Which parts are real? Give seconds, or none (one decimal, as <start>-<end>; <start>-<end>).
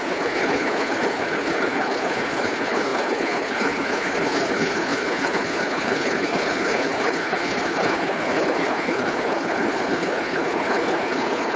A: none